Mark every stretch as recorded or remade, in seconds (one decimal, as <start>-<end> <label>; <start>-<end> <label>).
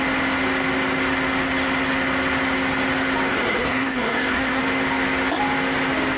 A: 0.0-3.3 recorded; 3.3-4.6 remade; 4.6-6.2 recorded